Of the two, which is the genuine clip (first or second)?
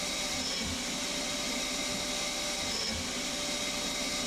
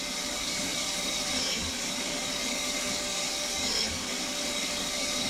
first